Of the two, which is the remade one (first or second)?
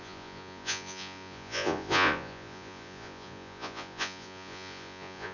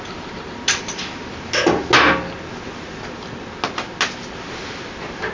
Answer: first